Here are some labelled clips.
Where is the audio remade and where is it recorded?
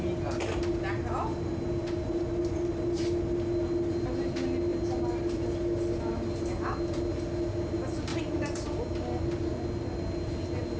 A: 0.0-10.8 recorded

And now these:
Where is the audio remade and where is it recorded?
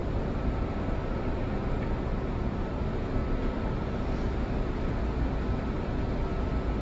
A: 0.0-1.2 remade; 1.2-2.1 recorded; 2.1-2.8 remade; 2.8-3.2 recorded; 3.2-4.9 remade; 4.9-6.8 recorded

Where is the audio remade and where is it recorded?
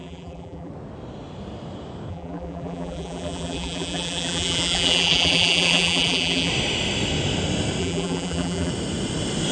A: 0.0-0.7 remade; 0.7-2.1 recorded; 2.1-6.5 remade; 6.5-7.8 recorded; 7.8-8.7 remade; 8.7-9.5 recorded